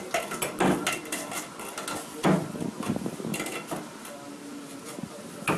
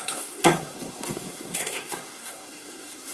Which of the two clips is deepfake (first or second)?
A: second